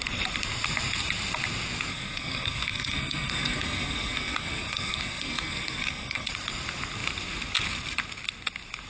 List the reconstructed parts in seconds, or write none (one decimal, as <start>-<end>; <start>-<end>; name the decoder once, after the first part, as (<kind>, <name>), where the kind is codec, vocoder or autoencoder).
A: 1.9-6.3 (codec, SNAC)